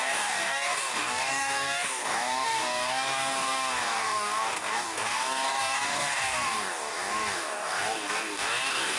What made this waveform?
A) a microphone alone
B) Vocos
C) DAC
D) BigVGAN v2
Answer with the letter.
C